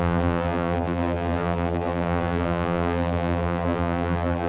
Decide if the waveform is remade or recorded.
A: remade